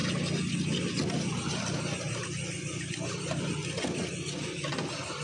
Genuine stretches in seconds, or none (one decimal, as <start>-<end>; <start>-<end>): 0.0-5.2